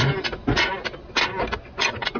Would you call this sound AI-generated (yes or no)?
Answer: no